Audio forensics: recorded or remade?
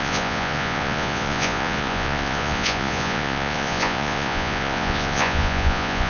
remade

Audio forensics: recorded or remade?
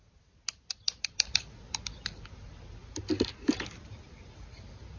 recorded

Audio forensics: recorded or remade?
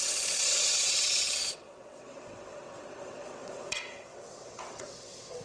remade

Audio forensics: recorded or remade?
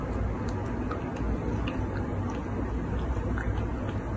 recorded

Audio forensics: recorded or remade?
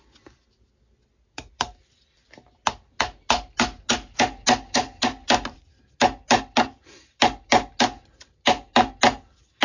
recorded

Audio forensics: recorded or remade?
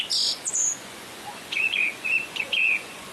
remade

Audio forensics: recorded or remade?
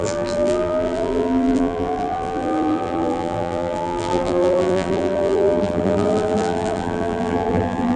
remade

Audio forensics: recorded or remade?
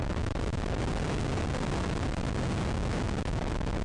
recorded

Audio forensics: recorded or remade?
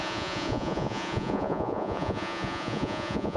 remade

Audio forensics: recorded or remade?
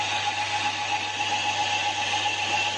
recorded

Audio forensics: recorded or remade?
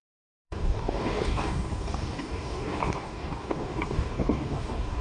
remade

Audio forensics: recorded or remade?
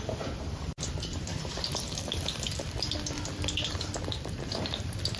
remade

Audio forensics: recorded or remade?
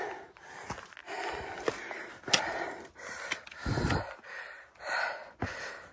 recorded